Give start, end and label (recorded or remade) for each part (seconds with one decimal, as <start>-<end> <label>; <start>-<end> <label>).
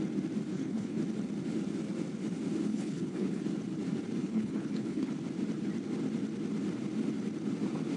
0.0-0.5 recorded; 0.5-1.0 remade; 1.0-2.7 recorded; 2.7-3.4 remade; 3.4-4.2 recorded; 4.2-5.1 remade; 5.1-8.0 recorded